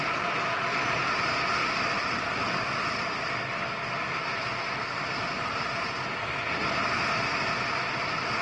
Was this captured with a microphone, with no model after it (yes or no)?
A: yes